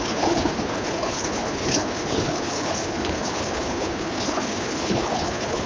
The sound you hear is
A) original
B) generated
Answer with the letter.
B